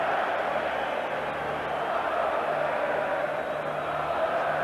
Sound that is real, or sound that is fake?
real